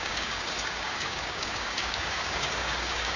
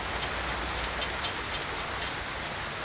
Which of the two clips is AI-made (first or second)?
first